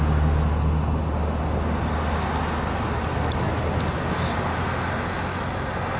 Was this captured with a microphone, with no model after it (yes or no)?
yes